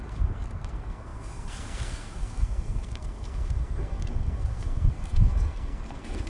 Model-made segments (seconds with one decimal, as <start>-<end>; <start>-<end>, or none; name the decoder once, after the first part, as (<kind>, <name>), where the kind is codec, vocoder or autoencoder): 0.0-6.3 (codec, SNAC)